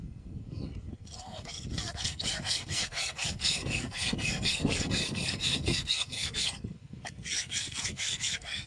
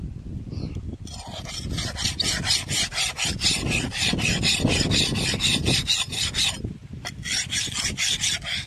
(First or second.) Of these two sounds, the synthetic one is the first